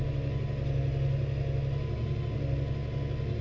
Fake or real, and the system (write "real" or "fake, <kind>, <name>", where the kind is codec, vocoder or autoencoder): real